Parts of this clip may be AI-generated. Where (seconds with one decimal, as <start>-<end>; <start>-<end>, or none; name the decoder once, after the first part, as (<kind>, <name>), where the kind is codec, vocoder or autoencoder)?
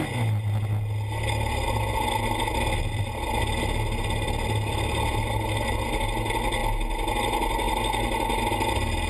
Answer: none